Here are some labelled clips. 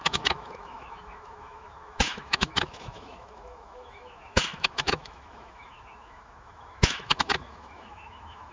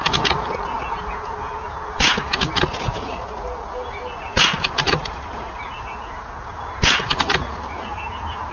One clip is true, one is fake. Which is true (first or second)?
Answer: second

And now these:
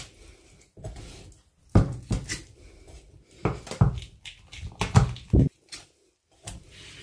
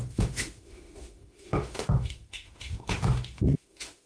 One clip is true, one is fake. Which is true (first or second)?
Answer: first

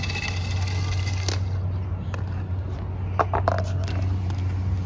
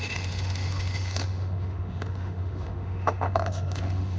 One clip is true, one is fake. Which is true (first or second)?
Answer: first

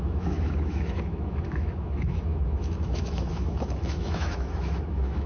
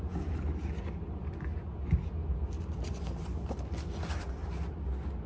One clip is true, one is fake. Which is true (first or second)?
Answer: second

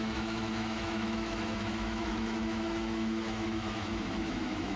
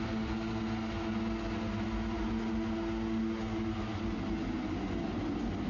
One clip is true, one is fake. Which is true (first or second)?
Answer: second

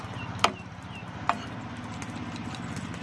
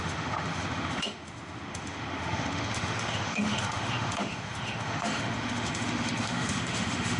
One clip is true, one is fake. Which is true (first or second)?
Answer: first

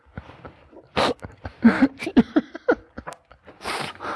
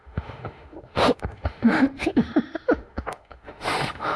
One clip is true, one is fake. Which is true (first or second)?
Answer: first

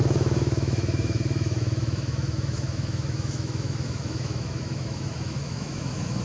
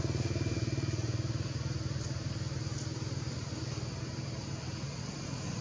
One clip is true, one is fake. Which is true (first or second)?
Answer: second